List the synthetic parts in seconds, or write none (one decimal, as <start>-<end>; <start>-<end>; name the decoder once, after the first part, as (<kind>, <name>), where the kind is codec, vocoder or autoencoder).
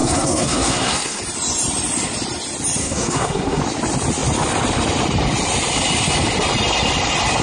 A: 0.0-1.2 (codec, SNAC); 2.8-3.6